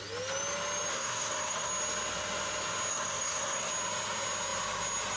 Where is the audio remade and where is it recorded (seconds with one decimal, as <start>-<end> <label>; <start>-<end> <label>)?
0.0-0.9 recorded; 0.9-1.7 remade; 1.7-2.9 recorded; 2.9-3.7 remade; 3.7-5.2 recorded